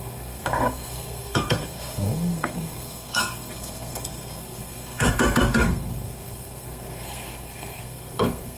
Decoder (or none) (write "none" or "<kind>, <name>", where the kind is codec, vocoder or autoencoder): codec, SNAC